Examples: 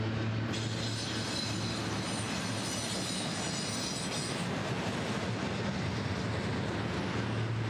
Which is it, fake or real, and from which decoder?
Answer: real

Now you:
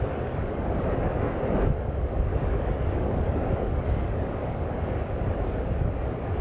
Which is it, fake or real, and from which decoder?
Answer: fake, codec, DAC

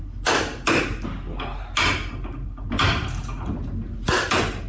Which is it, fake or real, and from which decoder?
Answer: real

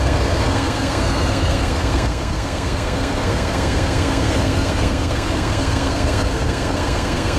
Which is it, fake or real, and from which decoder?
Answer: fake, codec, SNAC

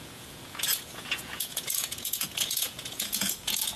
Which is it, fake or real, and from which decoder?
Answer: fake, vocoder, Vocos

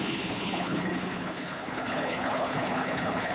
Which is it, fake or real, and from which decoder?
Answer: fake, codec, HILCodec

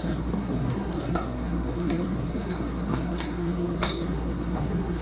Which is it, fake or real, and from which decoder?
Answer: fake, codec, SNAC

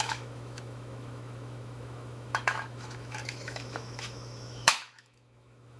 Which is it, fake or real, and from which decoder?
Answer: fake, autoencoder, DAC-VAE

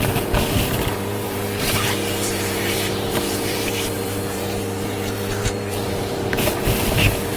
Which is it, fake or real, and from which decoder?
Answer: fake, vocoder, BigVGAN v2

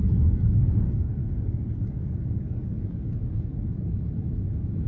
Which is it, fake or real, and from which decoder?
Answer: fake, codec, DAC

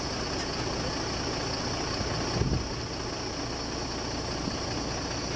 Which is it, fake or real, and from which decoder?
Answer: real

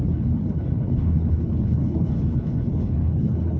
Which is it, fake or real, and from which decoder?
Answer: fake, codec, HILCodec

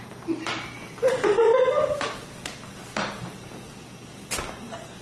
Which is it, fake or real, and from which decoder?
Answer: real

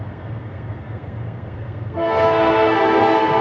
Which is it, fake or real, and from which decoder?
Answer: fake, codec, SNAC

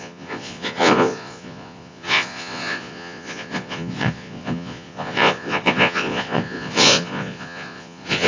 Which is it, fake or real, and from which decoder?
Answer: fake, vocoder, Vocos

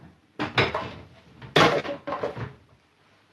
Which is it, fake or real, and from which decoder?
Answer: real